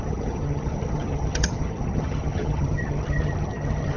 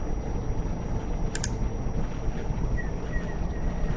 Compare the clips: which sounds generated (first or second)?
first